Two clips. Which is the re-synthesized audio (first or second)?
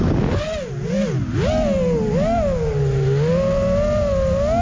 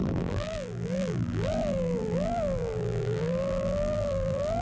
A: second